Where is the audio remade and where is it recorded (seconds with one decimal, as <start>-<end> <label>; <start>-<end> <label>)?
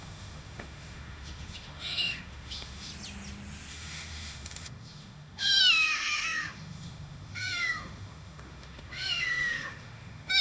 0.0-2.9 remade; 2.9-3.7 recorded; 3.7-10.4 remade